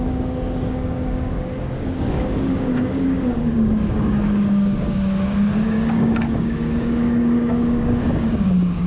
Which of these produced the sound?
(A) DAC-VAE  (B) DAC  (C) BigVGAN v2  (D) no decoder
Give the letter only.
B